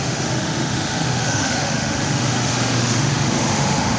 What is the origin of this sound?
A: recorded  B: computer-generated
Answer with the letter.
B